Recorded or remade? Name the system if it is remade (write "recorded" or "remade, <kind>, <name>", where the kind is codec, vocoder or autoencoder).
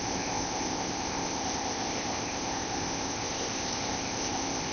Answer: remade, codec, ZipCodec